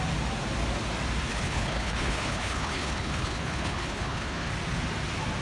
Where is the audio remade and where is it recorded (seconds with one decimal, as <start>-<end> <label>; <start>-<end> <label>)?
0.0-1.3 recorded; 1.3-4.5 remade; 4.5-5.4 recorded